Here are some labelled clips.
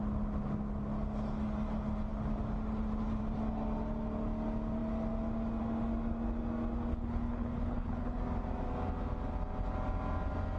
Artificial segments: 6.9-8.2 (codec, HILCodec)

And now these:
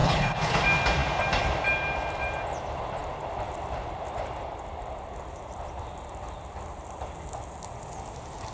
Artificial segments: 0.0-0.6 (codec, HILCodec)

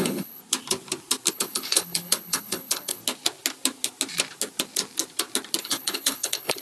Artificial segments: 0.0-0.4 (codec, HILCodec); 1.3-3.0; 5.6-6.6

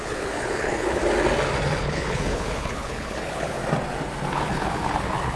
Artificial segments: 0.0-1.0 (codec, HILCodec); 1.8-3.6; 4.3-5.4

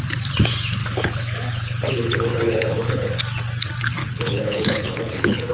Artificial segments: 0.8-3.2 (codec, HILCodec); 4.0-5.5

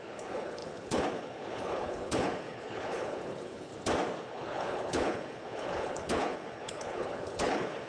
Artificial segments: 0.0-3.7 (codec, HILCodec); 4.2-7.9

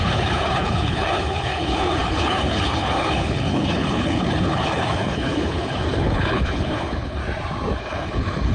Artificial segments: 0.0-7.2 (codec, HILCodec); 7.8-8.5